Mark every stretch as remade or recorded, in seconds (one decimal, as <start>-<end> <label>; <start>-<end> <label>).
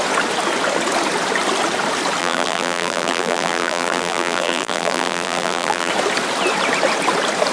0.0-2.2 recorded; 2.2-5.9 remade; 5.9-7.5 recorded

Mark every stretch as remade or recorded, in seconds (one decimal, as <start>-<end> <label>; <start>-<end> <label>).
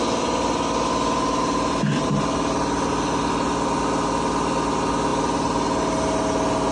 0.0-6.7 recorded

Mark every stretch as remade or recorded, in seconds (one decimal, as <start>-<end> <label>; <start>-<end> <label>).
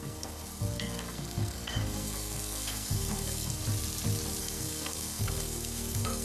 0.0-3.6 remade; 3.6-4.4 recorded; 4.4-6.2 remade